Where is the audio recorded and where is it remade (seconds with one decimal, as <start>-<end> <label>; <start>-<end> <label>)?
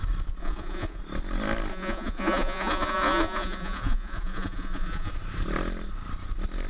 0.0-0.4 recorded; 0.4-1.0 remade; 1.0-1.7 recorded; 1.7-5.1 remade; 5.1-6.7 recorded